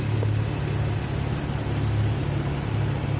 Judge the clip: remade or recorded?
recorded